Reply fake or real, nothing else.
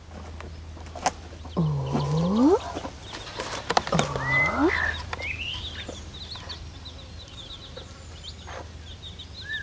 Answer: real